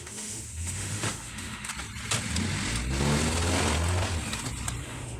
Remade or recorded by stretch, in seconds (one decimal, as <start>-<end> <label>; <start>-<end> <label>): 0.0-1.7 remade; 1.7-4.8 recorded; 4.8-5.2 remade